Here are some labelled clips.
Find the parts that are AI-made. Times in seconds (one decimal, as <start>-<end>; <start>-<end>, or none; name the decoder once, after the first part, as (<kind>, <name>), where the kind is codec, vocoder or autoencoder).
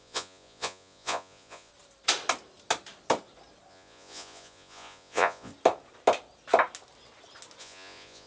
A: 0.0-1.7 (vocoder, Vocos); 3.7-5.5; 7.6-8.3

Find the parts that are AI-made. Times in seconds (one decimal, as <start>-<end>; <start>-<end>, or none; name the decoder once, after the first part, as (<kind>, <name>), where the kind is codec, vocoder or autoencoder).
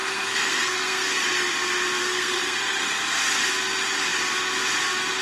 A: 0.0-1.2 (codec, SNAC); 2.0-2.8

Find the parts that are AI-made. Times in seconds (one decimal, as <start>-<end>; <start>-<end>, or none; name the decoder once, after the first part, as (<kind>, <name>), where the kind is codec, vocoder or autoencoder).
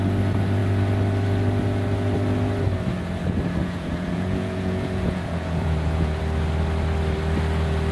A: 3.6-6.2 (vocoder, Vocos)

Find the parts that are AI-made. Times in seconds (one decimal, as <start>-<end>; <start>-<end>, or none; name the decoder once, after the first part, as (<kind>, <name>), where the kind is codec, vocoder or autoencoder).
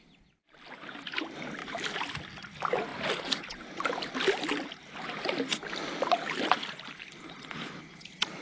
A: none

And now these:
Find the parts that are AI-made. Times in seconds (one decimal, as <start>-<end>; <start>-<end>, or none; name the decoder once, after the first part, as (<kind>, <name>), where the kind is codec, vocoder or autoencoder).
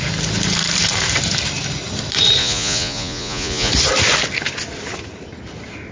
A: 2.4-3.7 (vocoder, Vocos)